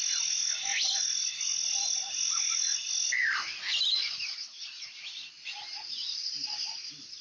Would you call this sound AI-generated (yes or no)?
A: no